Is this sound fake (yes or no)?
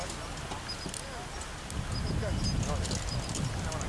no